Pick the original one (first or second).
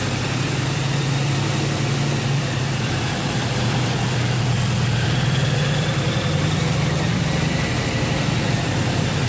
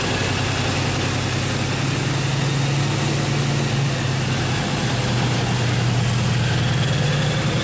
second